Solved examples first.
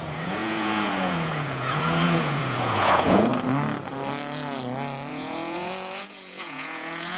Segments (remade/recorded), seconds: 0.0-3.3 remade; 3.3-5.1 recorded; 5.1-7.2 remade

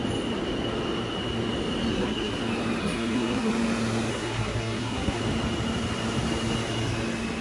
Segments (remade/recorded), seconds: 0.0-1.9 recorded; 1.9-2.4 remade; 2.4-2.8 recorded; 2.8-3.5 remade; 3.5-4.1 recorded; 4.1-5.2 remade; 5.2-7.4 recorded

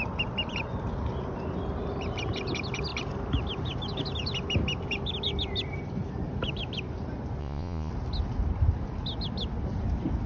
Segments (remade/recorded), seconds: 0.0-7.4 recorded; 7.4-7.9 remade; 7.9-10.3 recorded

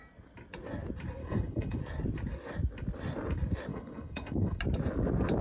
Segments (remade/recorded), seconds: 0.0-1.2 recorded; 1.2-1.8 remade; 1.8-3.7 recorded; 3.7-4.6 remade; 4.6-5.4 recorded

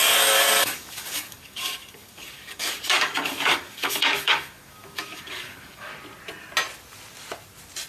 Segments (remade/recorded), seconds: 0.0-5.9 remade; 5.9-7.9 recorded

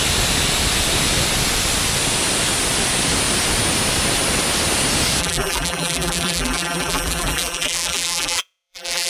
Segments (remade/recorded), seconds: 0.0-5.2 recorded; 5.2-9.1 remade

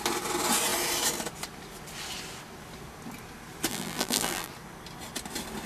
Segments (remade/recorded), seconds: 0.0-3.7 recorded; 3.7-4.5 remade; 4.5-5.7 recorded